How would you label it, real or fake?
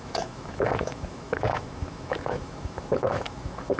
fake